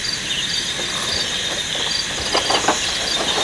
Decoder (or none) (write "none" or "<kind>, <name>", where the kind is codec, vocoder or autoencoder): none